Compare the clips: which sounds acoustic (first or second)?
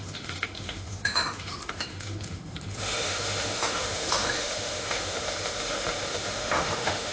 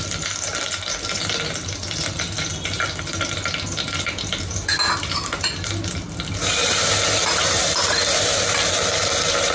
second